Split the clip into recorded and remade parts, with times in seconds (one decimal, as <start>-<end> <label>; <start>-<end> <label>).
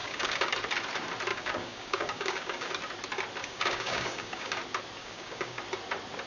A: 0.0-0.5 remade; 0.5-1.3 recorded; 1.3-2.7 remade; 2.7-3.4 recorded; 3.4-4.6 remade; 4.6-5.0 recorded; 5.0-5.6 remade; 5.6-6.3 recorded